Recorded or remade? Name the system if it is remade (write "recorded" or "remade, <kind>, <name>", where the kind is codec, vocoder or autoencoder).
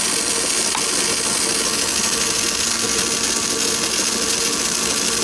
recorded